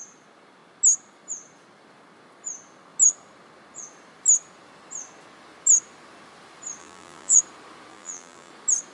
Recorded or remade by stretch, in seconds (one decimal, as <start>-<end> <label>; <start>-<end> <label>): 0.0-6.8 recorded; 6.8-7.4 remade; 7.4-7.9 recorded; 7.9-8.5 remade; 8.5-8.9 recorded